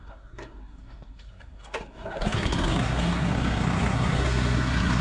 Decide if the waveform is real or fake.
fake